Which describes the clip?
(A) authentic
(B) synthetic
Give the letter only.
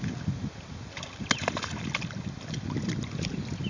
A